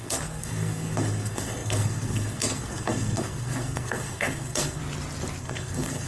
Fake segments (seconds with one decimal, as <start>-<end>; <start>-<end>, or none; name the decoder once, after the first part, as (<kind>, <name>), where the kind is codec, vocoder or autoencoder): 0.0-4.8 (codec, SNAC); 5.4-6.1